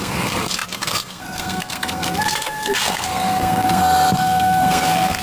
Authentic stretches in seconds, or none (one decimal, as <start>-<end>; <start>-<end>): none